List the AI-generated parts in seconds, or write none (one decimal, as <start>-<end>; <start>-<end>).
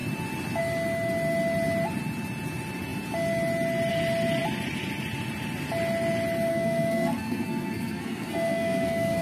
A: 6.5-9.2